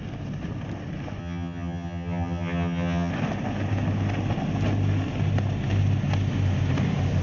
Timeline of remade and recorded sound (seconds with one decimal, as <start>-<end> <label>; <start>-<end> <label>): 0.0-1.2 recorded; 1.2-3.1 remade; 3.1-7.2 recorded